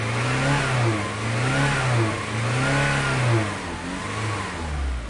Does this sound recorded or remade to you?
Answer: recorded